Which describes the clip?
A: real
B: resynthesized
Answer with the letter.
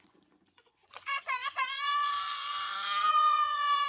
B